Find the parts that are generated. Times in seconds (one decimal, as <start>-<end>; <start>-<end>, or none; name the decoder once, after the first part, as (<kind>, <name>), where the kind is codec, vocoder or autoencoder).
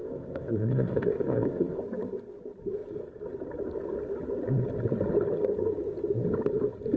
0.0-1.8 (codec, ZipCodec)